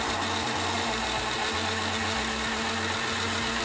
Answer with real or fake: real